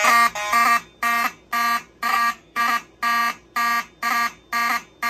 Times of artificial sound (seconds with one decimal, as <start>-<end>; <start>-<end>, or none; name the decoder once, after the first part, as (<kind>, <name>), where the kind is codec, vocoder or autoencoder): 2.1-2.6 (codec, SNAC)